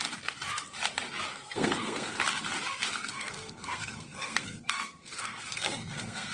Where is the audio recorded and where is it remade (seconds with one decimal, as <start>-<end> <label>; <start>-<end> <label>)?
0.0-1.3 recorded; 1.3-2.2 remade; 2.2-3.1 recorded; 3.1-6.3 remade